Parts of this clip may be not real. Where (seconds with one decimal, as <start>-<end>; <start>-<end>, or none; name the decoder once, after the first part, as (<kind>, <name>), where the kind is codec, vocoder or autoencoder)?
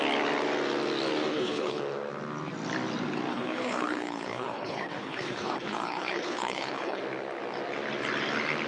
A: 1.3-1.8 (codec, HILCodec); 3.3-7.0